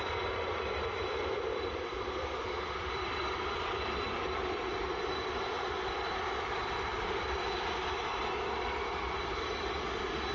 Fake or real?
fake